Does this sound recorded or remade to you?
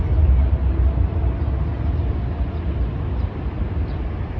recorded